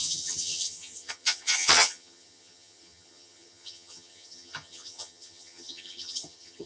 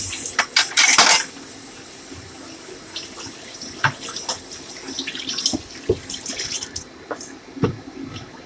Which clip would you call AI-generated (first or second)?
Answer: first